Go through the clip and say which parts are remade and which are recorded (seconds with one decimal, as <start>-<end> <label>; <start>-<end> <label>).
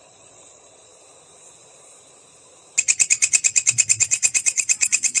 0.0-0.9 remade; 0.9-4.0 recorded; 4.0-5.2 remade